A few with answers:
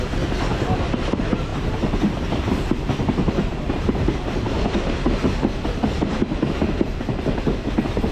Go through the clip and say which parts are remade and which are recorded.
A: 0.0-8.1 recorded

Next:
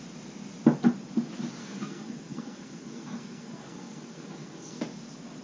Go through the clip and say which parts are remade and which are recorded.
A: 0.0-1.6 recorded; 1.6-4.8 remade; 4.8-5.4 recorded